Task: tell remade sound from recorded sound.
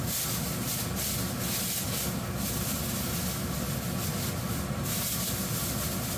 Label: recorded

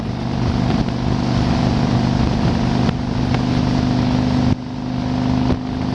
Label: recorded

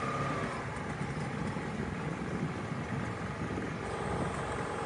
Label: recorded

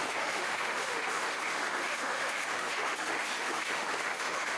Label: remade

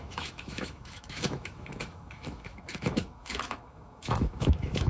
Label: remade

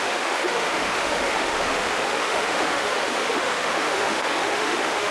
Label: remade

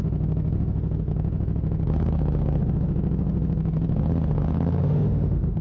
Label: remade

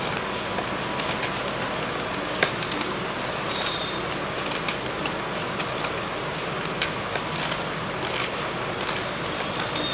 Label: recorded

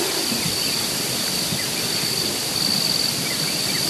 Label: recorded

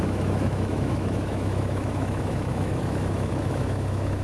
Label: remade